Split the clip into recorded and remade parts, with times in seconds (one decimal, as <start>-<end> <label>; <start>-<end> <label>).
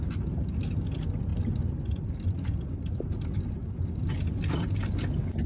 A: 0.0-5.5 recorded